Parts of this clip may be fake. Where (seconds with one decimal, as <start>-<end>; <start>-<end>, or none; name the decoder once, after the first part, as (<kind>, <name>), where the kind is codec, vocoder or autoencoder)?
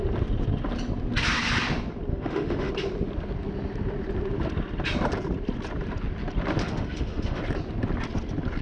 2.1-2.7 (autoencoder, DAC-VAE); 6.6-7.4